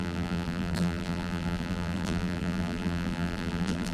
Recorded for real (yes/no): no